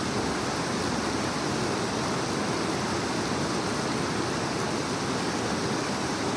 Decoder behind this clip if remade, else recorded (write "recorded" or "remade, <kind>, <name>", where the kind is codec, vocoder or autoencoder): recorded